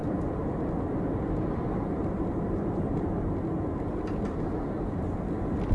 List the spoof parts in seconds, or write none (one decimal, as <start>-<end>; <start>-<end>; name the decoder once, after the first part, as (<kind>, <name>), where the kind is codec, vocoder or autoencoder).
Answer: 0.0-3.1 (vocoder, BigVGAN v2)